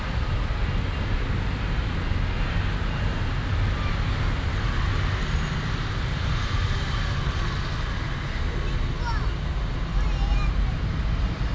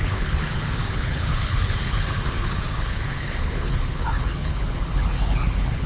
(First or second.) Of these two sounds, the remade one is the second